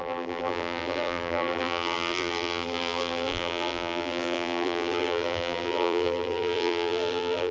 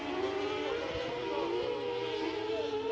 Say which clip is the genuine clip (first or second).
second